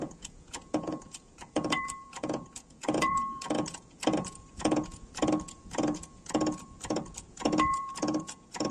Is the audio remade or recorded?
remade